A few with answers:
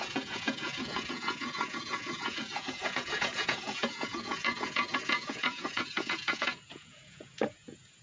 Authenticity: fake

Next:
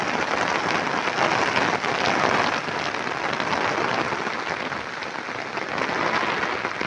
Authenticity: real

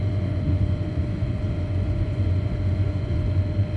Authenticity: fake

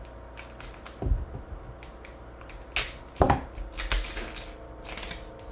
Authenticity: real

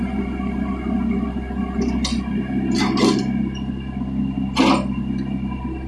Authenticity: real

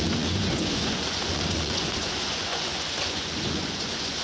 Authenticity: fake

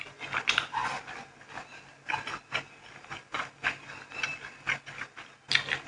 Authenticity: real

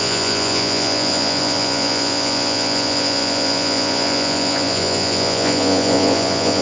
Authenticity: fake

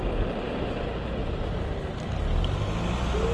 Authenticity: real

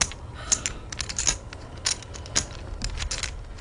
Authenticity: real